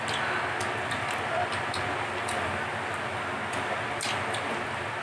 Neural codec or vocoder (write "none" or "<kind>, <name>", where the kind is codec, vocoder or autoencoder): none